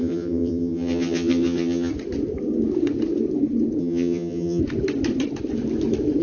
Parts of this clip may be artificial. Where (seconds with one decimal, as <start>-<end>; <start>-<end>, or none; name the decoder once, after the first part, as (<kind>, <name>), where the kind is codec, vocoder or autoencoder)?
0.0-1.9 (vocoder, HiFi-GAN); 3.8-4.6